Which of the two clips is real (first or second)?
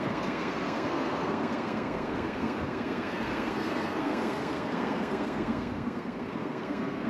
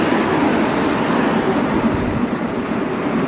second